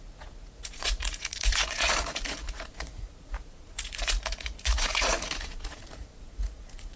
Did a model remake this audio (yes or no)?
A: yes